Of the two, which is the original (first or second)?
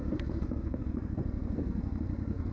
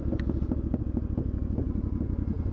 second